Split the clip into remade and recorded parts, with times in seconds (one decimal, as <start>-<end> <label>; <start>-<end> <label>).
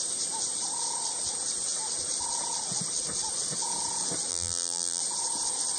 0.0-4.3 recorded; 4.3-5.0 remade; 5.0-5.8 recorded